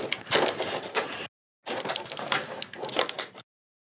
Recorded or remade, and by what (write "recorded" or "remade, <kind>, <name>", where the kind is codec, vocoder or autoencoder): recorded